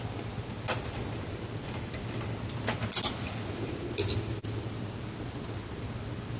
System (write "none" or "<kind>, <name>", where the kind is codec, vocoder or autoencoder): none